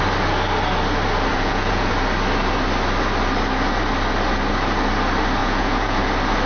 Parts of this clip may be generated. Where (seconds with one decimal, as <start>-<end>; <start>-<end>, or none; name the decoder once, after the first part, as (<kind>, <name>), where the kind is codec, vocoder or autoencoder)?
1.3-1.9 (vocoder, Vocos); 5.4-6.0